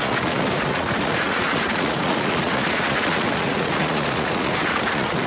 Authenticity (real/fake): fake